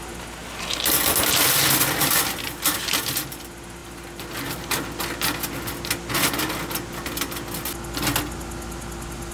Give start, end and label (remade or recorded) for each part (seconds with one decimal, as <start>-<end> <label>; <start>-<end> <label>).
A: 0.0-9.3 recorded